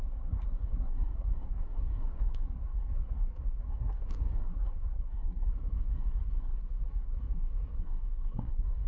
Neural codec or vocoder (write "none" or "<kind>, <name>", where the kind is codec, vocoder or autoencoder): codec, SNAC